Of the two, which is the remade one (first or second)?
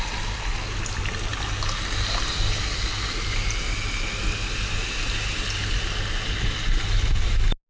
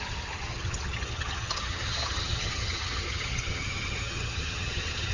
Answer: second